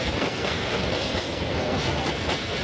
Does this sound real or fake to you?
fake